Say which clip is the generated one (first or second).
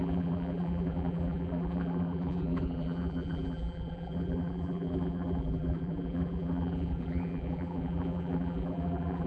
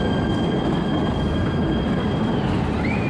first